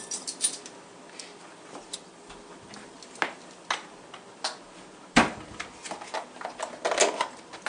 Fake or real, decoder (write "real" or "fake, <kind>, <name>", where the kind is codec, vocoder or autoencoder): real